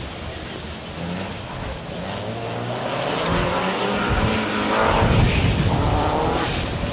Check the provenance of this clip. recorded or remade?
recorded